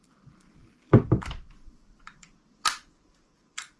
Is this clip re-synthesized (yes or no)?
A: yes